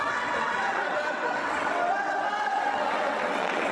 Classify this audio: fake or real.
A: fake